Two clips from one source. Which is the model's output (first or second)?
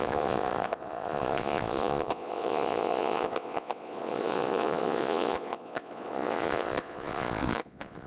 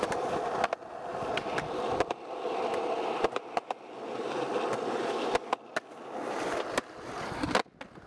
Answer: first